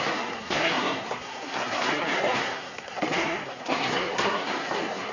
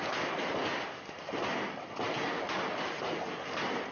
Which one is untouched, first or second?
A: second